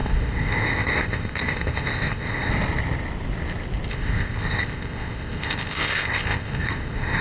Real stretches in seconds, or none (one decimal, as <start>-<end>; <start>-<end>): 2.5-3.9